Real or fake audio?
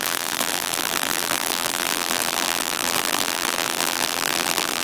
fake